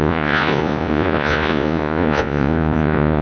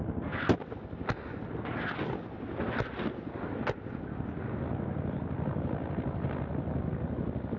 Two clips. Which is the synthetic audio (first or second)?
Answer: first